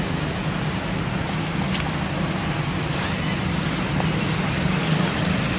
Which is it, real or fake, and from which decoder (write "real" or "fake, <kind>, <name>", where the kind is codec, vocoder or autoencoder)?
real